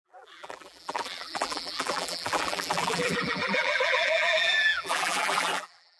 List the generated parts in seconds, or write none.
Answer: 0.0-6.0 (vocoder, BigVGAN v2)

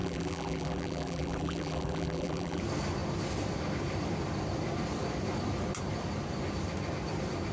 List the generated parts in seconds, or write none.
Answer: 0.0-2.6 (vocoder, BigVGAN v2)

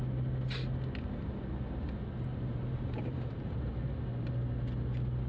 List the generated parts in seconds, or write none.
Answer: 2.3-3.7 (vocoder, BigVGAN v2)